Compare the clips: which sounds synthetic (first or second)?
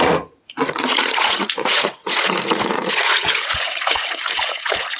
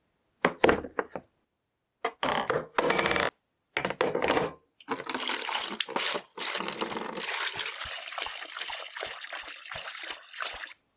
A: first